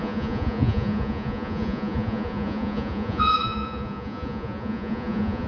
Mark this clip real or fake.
fake